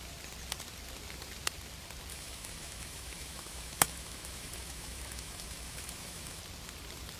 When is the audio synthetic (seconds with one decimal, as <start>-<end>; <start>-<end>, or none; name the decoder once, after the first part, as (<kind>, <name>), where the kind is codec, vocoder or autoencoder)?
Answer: 2.1-6.4 (autoencoder, DAC-VAE)